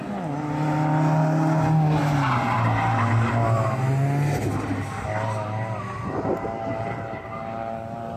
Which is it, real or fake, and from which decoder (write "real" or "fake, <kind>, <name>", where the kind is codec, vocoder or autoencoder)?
real